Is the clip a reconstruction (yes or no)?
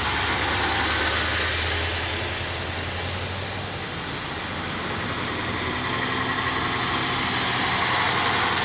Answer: no